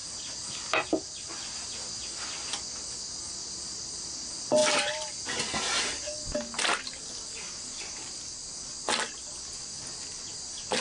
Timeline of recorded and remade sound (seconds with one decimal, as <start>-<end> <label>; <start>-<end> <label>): 0.0-10.8 recorded